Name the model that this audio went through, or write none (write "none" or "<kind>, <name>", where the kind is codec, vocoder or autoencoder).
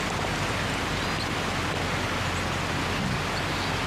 none